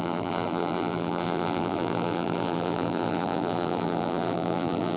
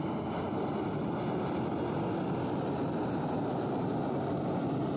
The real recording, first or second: second